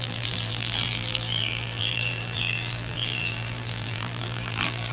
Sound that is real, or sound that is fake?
fake